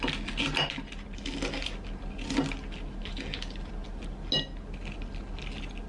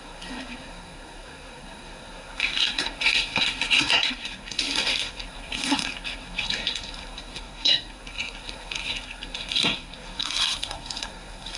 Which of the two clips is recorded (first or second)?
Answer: first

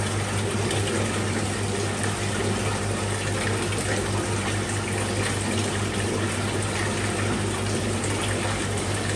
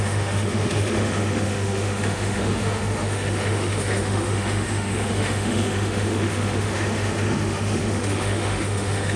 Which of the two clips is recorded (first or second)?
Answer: first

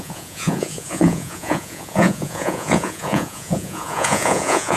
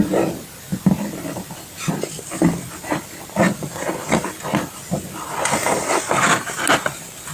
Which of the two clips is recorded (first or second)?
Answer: second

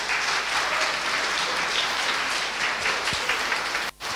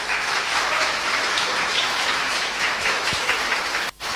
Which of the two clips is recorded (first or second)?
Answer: first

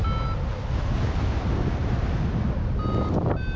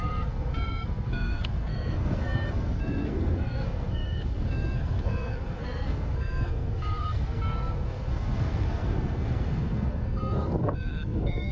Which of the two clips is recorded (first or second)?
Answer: first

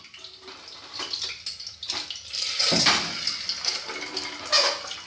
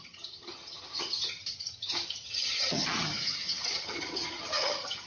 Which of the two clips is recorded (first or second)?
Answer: first